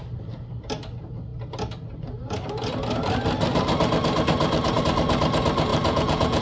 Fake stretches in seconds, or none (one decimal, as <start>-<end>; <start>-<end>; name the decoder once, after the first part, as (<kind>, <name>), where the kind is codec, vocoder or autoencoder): 5.7-6.4 (vocoder, Vocos)